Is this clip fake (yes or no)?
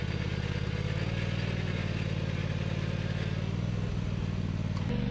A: no